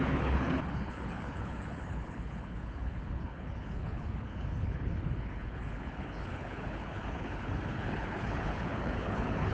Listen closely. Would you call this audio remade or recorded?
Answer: remade